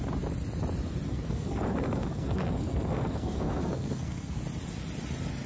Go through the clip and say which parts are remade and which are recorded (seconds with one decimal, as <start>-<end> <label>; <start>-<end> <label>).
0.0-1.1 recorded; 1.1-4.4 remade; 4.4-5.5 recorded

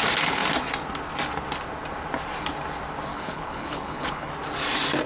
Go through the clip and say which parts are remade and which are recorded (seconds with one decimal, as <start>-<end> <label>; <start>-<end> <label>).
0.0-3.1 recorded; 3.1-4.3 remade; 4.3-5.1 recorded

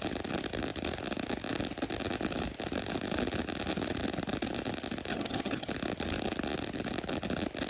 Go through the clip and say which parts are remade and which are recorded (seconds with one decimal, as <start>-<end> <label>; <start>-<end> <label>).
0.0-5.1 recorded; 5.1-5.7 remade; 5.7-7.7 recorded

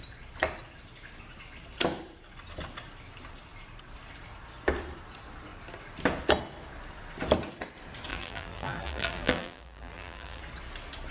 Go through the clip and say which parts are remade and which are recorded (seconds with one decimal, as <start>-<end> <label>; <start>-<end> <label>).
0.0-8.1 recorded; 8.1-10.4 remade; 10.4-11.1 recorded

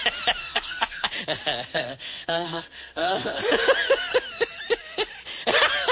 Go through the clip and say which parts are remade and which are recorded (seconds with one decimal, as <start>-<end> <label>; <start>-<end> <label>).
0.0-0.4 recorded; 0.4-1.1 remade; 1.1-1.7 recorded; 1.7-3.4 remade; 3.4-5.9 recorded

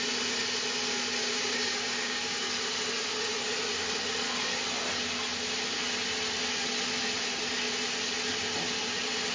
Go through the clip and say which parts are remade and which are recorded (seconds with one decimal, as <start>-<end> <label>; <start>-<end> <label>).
0.0-1.2 recorded; 1.2-2.4 remade; 2.4-9.3 recorded